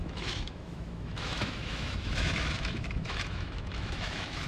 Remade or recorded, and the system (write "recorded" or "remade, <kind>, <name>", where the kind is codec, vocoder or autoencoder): remade, autoencoder, DAC-VAE